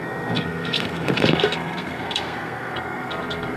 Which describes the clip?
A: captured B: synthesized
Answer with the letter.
B